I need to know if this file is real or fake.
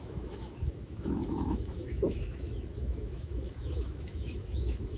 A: fake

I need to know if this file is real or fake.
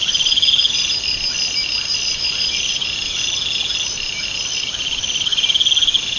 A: real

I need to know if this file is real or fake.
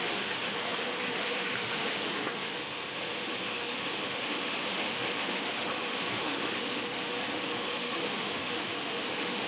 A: fake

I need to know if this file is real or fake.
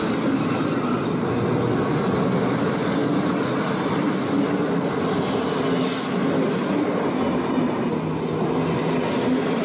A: real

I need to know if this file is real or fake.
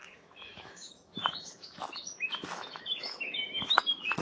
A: fake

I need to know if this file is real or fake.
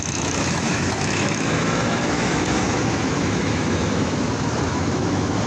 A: fake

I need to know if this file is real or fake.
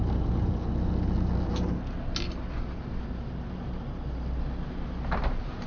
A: real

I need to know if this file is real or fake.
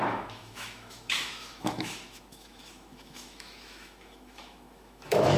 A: fake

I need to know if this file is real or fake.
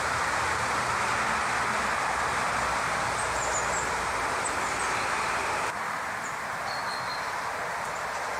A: real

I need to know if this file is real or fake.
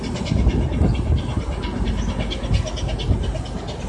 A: real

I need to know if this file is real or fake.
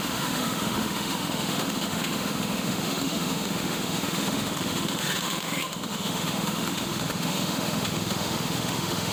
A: fake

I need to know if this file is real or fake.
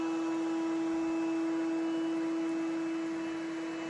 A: real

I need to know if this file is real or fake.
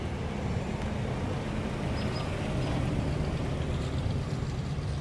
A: real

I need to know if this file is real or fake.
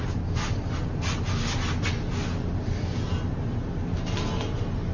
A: real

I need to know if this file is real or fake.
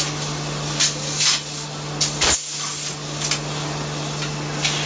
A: real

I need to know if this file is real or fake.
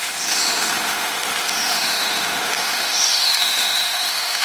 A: fake